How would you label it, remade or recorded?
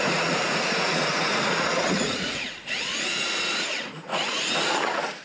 remade